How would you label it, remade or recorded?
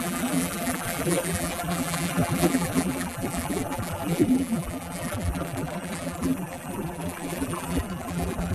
remade